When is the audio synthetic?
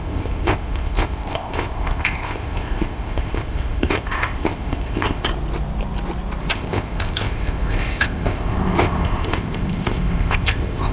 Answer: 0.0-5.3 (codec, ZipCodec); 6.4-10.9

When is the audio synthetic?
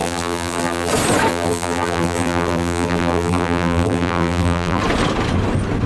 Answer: 0.0-0.9 (vocoder, BigVGAN v2); 1.3-4.8